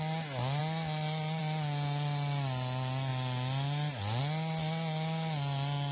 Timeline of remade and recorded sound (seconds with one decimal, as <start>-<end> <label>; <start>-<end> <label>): 0.0-5.9 recorded